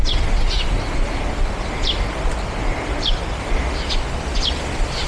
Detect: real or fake real